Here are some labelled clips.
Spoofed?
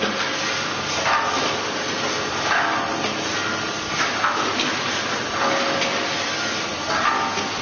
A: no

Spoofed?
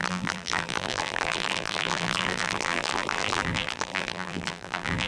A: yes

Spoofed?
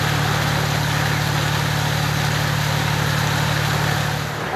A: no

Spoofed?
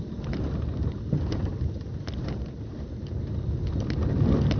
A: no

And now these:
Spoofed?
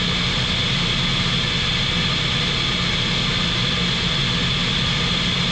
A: no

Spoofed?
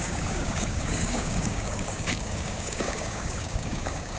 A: yes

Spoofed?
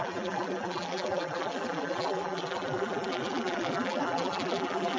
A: yes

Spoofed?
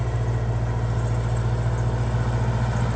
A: no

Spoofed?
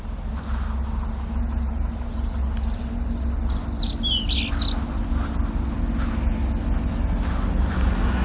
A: no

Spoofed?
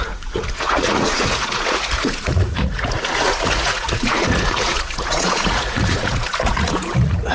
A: yes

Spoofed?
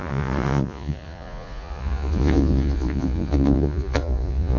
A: yes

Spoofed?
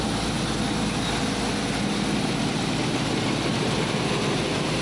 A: no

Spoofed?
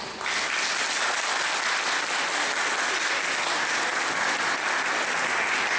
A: no